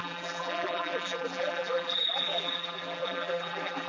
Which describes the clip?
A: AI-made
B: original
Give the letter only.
A